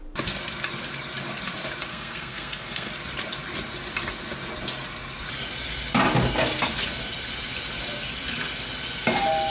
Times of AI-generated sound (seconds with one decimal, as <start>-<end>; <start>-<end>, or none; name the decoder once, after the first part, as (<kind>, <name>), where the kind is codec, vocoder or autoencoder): 1.9-2.9 (codec, SNAC)